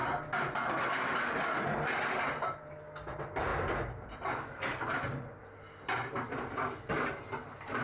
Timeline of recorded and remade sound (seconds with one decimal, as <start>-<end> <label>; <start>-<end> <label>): 0.0-7.8 recorded